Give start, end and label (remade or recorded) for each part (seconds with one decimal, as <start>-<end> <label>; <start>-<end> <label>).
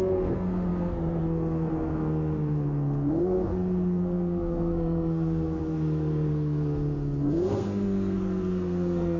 0.0-9.2 remade